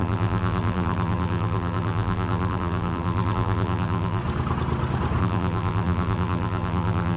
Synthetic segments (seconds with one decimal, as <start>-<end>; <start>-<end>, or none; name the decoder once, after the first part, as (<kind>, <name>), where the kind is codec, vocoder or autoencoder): 0.0-4.2 (vocoder, BigVGAN v2); 5.2-7.2